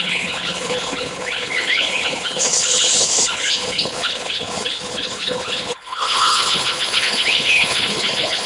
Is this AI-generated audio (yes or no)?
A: yes